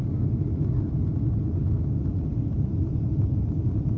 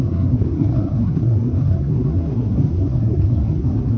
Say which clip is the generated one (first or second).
second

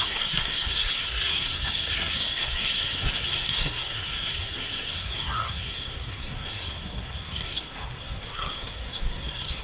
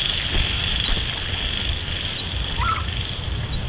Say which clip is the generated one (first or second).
first